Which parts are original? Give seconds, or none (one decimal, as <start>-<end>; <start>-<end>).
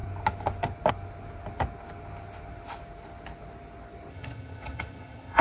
0.0-4.1